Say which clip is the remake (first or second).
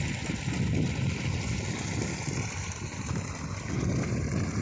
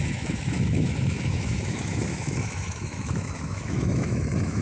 second